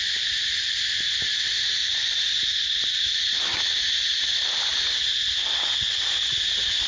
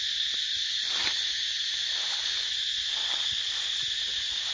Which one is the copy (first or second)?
second